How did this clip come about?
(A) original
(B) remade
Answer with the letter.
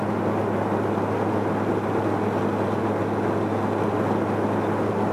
A